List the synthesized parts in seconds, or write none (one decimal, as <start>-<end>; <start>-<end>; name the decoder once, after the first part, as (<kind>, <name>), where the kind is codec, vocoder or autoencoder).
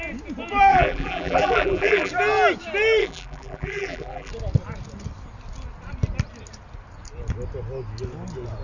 0.7-2.1 (vocoder, BigVGAN v2); 3.0-4.3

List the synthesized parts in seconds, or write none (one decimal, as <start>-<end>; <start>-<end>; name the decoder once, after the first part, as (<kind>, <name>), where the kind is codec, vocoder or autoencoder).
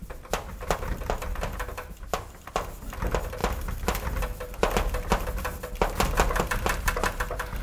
none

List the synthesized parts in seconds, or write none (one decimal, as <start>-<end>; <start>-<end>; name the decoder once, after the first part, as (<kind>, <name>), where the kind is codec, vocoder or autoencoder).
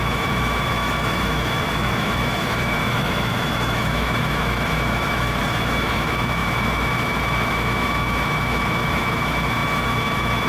0.0-10.5 (autoencoder, DAC-VAE)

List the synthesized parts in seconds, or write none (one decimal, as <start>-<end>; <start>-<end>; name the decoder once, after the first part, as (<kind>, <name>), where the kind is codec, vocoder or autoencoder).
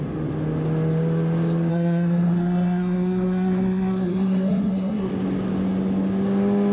1.7-5.1 (codec, SNAC)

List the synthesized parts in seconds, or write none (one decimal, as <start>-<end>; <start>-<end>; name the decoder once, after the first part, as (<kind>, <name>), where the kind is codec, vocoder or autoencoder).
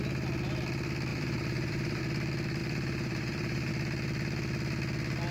1.1-2.0 (vocoder, BigVGAN v2); 2.6-3.7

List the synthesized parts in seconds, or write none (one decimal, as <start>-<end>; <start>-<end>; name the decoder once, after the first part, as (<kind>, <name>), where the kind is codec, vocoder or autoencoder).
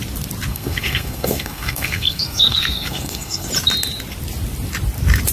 0.5-3.5 (codec, SNAC)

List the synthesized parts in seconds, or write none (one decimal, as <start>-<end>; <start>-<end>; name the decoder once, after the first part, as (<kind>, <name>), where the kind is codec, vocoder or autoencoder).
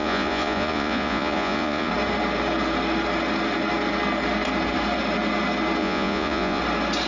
0.0-1.9 (vocoder, Vocos); 5.8-6.6